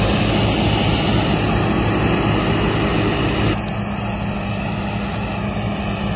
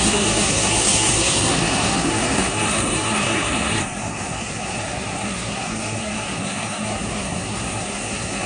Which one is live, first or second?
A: first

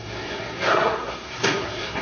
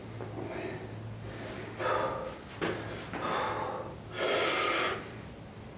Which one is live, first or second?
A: second